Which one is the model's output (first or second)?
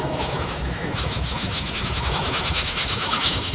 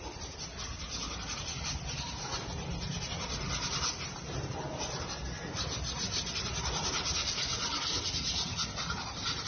first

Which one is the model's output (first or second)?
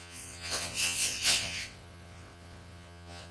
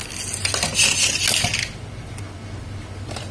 first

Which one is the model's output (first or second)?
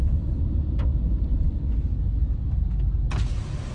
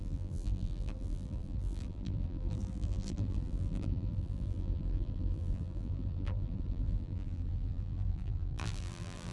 second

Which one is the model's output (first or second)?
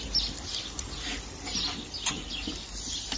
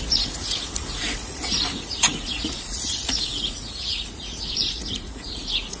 second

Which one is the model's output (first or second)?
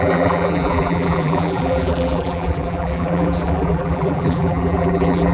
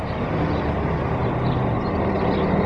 first